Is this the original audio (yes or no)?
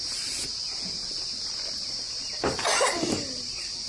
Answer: yes